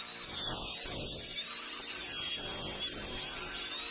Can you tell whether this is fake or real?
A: real